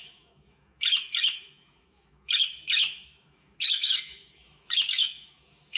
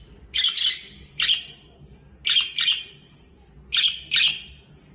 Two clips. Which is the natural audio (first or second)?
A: second